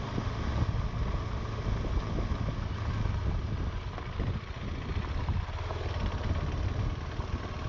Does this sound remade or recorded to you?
recorded